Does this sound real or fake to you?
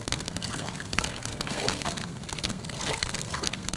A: fake